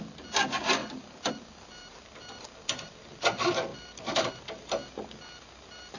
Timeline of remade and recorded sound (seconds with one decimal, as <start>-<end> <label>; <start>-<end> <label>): 0.0-3.7 recorded; 3.7-4.3 remade; 4.3-6.0 recorded